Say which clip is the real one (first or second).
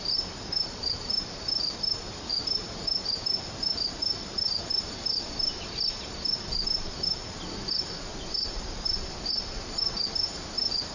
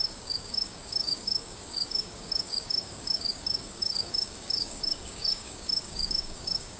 first